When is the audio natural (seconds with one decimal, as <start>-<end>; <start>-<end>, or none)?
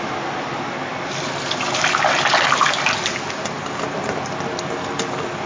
0.0-5.5